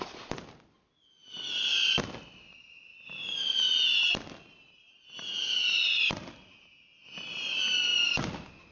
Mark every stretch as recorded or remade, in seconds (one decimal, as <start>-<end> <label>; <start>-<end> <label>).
0.0-1.2 recorded; 1.2-1.9 remade; 1.9-2.9 recorded; 2.9-4.8 remade; 4.8-7.9 recorded; 7.9-8.7 remade